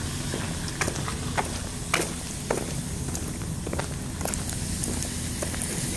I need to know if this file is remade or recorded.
recorded